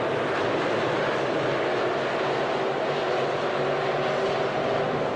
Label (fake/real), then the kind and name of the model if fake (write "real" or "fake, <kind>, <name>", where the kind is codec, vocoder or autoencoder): real